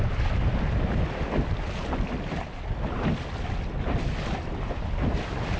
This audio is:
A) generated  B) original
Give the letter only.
B